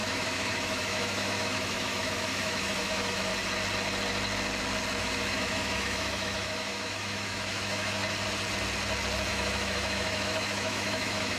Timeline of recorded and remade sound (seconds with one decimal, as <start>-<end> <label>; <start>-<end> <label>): 0.0-3.3 remade; 3.3-5.0 recorded; 5.0-8.0 remade; 8.0-9.3 recorded; 9.3-11.4 remade